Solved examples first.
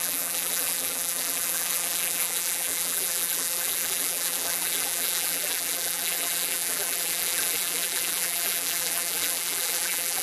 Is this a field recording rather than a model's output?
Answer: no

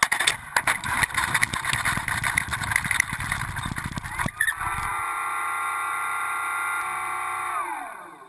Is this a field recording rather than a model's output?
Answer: yes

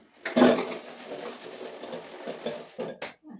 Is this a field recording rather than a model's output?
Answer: yes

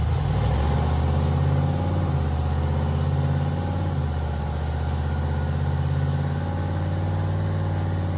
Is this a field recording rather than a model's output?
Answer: yes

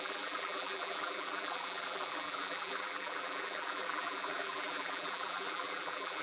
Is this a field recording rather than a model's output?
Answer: no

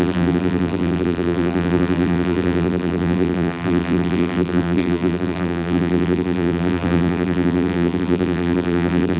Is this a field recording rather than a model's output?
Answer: no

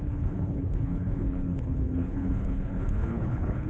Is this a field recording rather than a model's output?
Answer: no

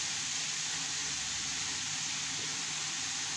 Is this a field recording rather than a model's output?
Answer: yes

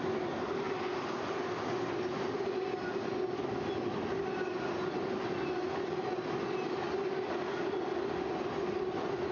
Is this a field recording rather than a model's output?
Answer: yes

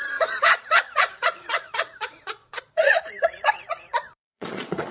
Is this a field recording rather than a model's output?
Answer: no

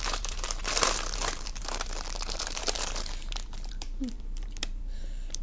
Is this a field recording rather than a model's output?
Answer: no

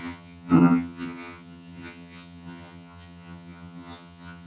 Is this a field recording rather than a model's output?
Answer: no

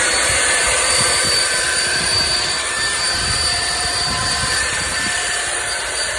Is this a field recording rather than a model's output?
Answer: no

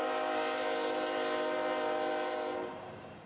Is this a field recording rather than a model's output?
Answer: yes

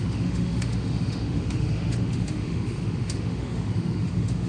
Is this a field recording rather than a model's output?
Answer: no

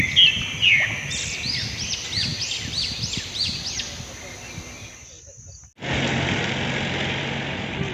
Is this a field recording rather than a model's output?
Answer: yes